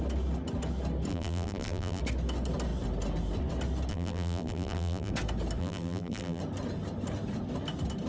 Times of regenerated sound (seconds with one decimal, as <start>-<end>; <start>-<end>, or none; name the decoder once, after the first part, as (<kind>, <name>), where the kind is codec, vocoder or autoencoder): 1.1-2.0 (vocoder, BigVGAN v2); 3.9-5.1; 5.6-6.4